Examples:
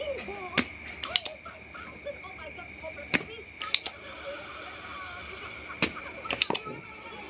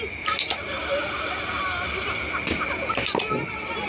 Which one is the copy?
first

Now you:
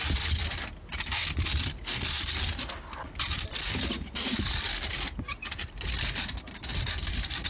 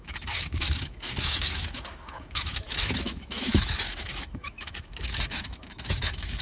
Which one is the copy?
second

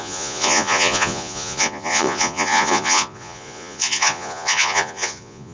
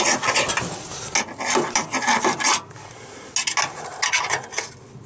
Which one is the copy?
first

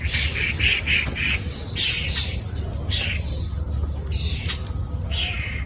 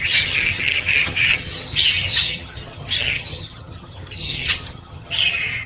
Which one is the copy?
second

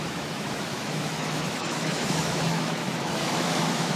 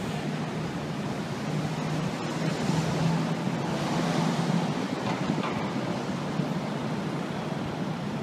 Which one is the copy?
first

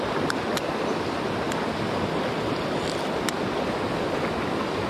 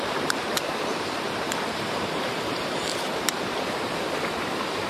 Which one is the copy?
second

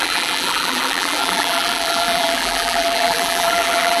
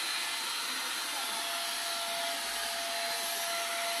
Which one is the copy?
first